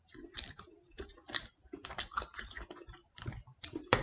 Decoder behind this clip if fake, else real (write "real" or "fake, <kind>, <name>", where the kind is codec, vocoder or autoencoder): fake, vocoder, BigVGAN v2